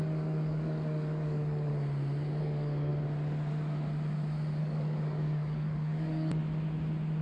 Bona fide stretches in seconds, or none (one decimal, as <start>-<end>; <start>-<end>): 1.7-2.4; 2.9-4.6; 6.4-7.2

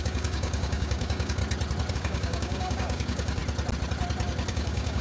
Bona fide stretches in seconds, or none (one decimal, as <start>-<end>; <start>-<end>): 1.4-1.9; 3.4-4.5